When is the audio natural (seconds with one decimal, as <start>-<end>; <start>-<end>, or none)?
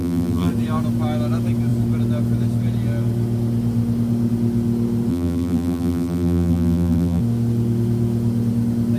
0.5-5.1; 7.2-9.0